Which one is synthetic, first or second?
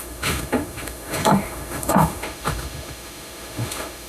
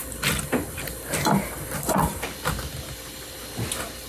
first